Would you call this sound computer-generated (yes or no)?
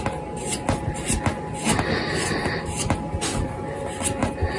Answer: no